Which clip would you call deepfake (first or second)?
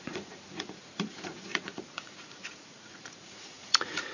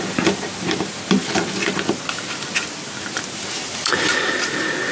first